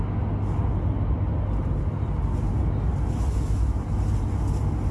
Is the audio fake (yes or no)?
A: no